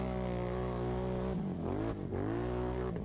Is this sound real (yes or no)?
yes